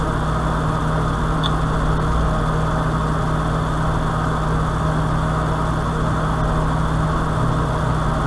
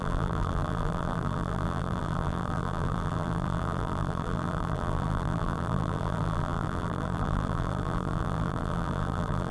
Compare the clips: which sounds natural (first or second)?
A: first